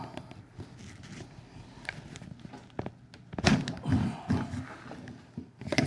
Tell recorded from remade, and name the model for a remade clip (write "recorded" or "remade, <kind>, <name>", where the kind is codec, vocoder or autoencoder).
recorded